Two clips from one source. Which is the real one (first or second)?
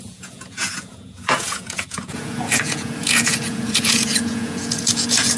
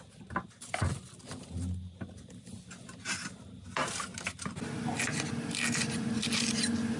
second